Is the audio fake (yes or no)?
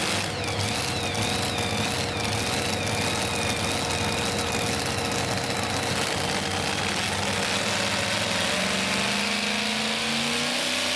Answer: no